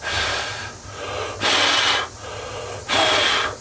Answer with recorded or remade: recorded